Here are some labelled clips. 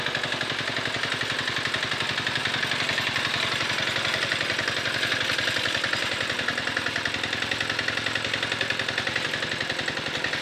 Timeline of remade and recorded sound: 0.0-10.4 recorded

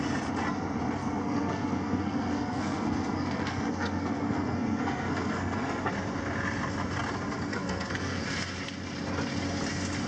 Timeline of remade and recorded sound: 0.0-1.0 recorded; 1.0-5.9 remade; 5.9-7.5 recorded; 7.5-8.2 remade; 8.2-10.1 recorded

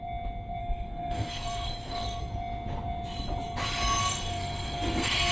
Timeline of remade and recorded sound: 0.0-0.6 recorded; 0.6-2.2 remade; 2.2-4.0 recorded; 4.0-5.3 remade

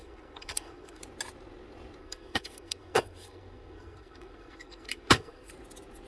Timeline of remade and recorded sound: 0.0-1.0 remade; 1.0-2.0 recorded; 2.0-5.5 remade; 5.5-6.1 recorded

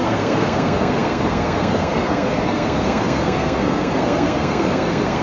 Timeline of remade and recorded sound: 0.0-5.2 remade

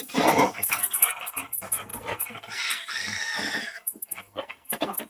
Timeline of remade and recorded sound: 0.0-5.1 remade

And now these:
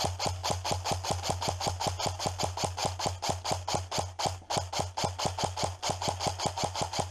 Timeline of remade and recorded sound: 0.0-7.1 recorded

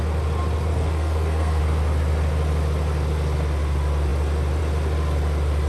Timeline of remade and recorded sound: 0.0-0.7 recorded; 0.7-1.6 remade; 1.6-5.7 recorded